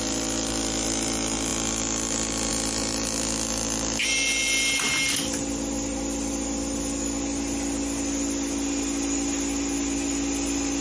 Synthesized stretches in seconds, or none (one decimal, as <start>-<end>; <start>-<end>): none